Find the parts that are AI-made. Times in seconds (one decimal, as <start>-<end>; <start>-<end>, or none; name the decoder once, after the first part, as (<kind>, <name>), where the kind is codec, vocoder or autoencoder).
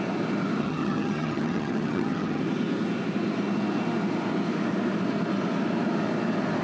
0.6-2.4 (vocoder, HiFi-GAN)